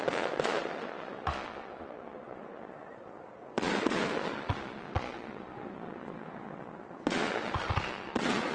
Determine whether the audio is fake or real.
fake